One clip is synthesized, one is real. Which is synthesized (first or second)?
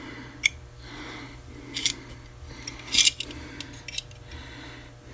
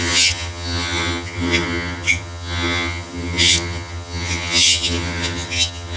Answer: second